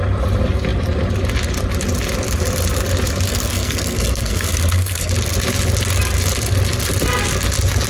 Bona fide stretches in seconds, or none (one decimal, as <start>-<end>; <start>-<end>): 0.0-3.3; 5.1-7.9